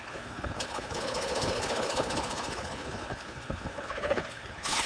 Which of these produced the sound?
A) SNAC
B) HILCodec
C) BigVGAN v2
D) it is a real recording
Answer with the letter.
B